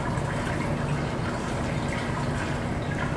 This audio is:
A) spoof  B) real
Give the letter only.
B